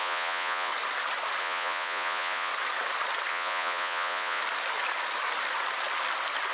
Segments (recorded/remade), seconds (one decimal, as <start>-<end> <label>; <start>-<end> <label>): 0.0-0.7 remade; 0.7-1.4 recorded; 1.4-2.5 remade; 2.5-3.3 recorded; 3.3-4.4 remade; 4.4-6.5 recorded